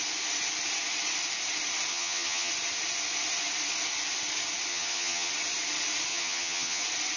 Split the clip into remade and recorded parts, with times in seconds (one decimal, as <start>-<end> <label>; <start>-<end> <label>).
0.0-1.9 recorded; 1.9-2.5 remade; 2.5-4.7 recorded; 4.7-5.3 remade; 5.3-6.1 recorded; 6.1-6.8 remade; 6.8-7.2 recorded